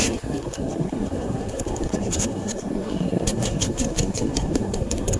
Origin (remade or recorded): remade